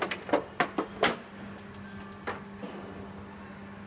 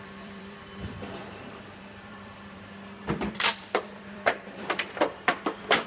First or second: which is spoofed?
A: second